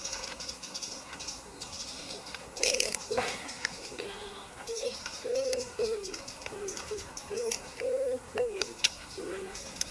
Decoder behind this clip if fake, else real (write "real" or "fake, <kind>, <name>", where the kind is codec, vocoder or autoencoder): fake, codec, SNAC